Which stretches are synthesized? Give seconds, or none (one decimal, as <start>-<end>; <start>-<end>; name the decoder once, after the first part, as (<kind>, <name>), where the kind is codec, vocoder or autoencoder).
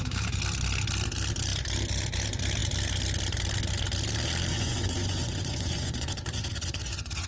4.5-7.3 (vocoder, Vocos)